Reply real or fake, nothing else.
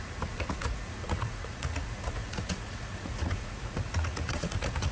fake